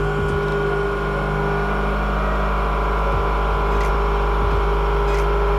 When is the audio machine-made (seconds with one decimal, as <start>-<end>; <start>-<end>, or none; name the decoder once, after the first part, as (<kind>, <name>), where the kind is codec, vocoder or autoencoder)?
none